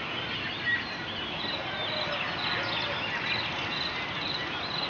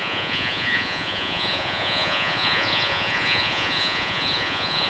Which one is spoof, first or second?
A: second